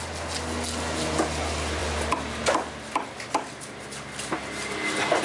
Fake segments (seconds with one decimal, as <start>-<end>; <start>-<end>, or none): none

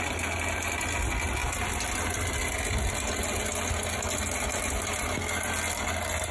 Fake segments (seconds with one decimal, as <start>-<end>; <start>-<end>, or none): none

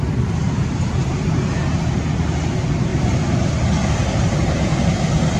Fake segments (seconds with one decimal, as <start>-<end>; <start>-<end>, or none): 0.4-1.4; 2.9-3.5; 4.0-4.8

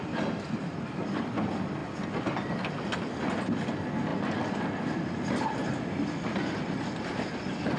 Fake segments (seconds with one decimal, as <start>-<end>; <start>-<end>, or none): none

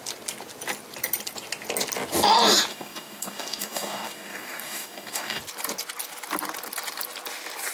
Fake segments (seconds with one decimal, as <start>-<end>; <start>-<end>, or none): 2.7-5.4

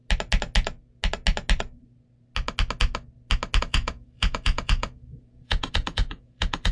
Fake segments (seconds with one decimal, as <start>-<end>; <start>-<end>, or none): 3.6-6.7